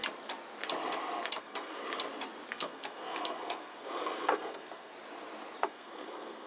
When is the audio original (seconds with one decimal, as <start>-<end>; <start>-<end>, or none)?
0.0-1.4; 1.8-2.5; 4.9-5.6